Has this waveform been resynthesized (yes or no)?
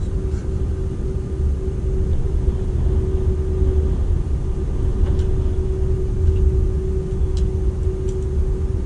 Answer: no